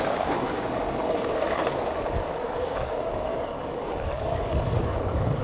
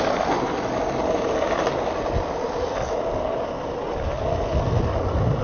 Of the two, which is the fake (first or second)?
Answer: first